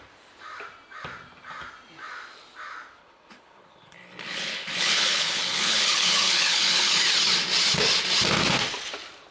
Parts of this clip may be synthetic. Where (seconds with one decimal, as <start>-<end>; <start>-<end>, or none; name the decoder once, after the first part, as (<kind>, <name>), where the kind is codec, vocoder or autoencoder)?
3.0-7.0 (codec, HILCodec)